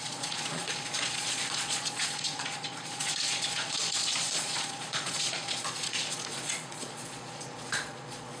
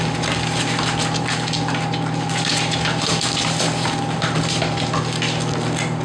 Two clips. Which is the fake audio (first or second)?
first